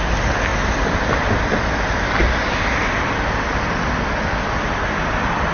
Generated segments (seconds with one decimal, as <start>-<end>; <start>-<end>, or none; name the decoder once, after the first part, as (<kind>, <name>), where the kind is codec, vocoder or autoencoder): none